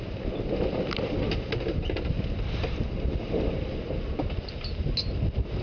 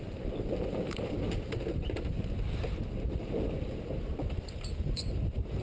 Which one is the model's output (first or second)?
second